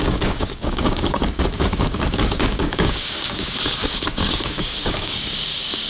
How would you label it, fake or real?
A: fake